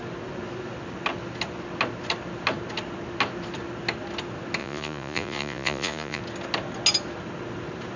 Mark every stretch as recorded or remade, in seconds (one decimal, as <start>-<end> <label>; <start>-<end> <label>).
0.0-4.6 recorded; 4.6-6.2 remade; 6.2-8.0 recorded